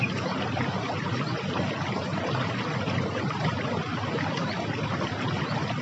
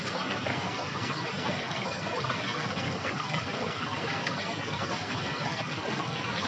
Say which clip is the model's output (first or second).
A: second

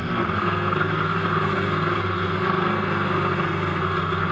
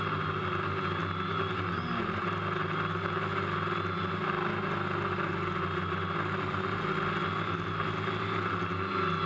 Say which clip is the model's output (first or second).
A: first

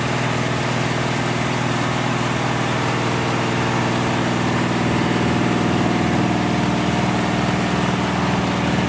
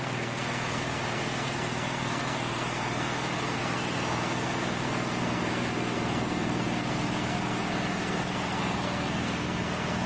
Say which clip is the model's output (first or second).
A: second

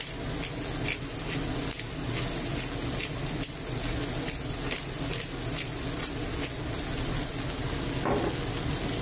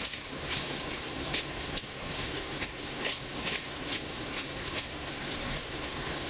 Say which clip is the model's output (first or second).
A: second